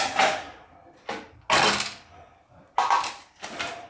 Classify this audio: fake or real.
real